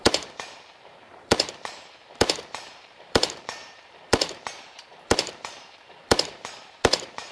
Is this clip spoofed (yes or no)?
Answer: yes